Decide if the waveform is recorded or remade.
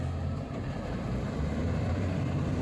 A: remade